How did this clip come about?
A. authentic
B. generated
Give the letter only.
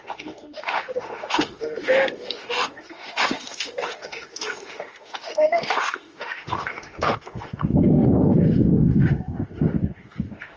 B